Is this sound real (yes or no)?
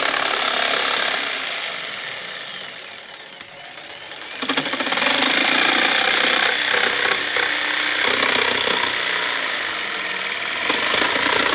yes